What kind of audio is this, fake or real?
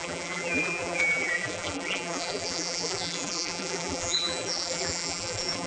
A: fake